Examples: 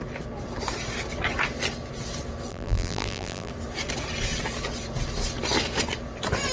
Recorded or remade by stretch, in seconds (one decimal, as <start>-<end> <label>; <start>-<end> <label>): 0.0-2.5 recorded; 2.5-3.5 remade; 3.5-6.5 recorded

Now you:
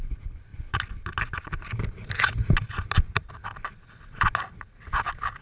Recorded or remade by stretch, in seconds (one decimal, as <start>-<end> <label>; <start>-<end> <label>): 0.0-5.4 recorded

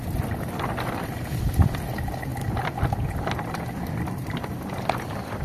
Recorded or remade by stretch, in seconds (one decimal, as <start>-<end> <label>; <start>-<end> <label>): 0.0-5.4 recorded

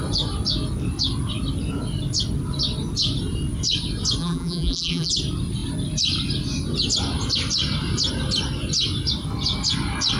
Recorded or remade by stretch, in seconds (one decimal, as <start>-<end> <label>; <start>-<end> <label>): 0.0-4.2 recorded; 4.2-5.1 remade; 5.1-10.2 recorded